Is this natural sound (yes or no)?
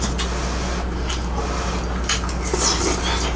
yes